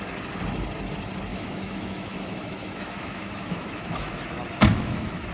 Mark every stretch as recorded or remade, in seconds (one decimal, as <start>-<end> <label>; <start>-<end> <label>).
0.0-1.3 recorded; 1.3-4.1 remade; 4.1-4.7 recorded; 4.7-5.3 remade